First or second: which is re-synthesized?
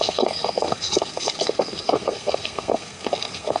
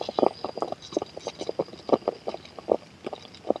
first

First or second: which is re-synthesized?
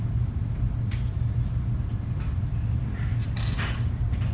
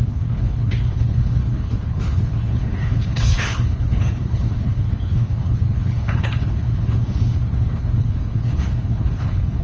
second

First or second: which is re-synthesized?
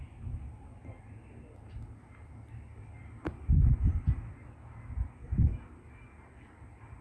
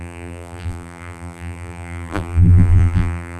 second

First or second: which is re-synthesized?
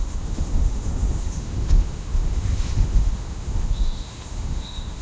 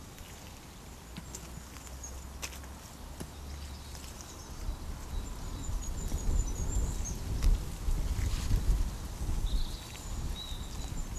first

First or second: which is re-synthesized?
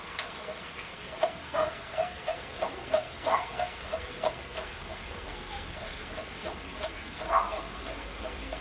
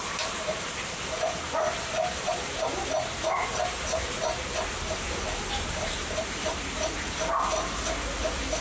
first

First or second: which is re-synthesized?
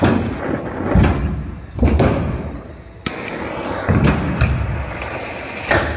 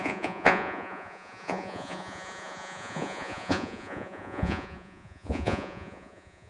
second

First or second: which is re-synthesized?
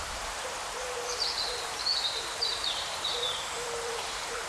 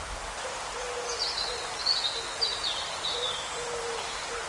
first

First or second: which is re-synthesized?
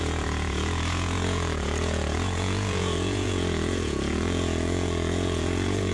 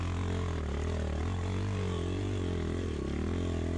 first